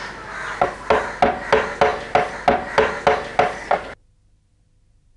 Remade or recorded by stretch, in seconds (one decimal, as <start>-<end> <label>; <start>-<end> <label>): 0.0-5.2 recorded